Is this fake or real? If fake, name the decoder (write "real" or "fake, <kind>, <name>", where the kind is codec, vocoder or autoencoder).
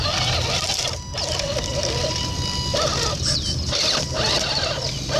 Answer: real